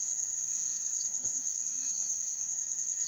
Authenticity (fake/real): fake